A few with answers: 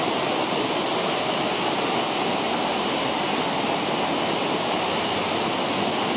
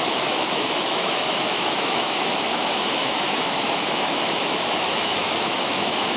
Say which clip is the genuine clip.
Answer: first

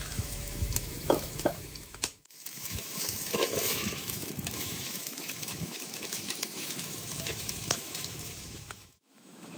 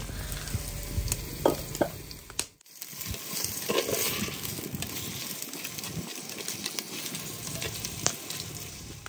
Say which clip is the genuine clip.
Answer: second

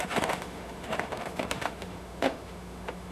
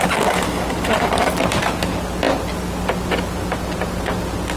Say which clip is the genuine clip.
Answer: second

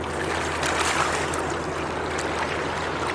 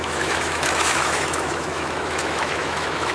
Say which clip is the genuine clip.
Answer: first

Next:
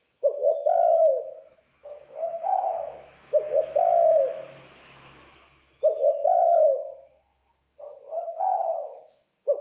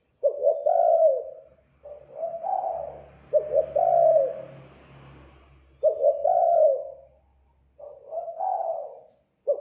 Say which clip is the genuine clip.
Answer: second